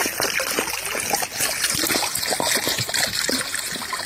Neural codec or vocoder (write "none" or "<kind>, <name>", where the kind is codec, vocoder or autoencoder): none